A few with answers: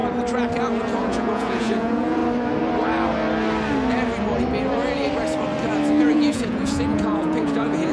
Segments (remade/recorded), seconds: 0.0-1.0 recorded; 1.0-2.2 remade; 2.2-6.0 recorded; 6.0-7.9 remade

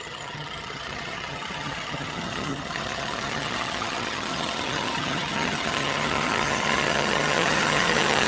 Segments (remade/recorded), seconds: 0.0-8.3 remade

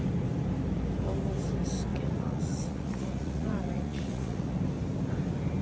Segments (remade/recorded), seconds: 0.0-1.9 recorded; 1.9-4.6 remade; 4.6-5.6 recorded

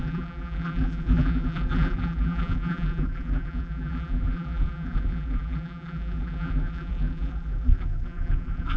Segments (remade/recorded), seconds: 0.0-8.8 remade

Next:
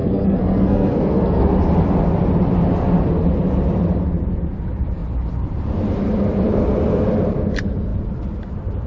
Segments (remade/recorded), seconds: 0.0-1.4 remade; 1.4-8.9 recorded